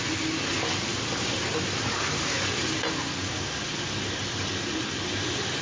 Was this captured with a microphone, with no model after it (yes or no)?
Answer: yes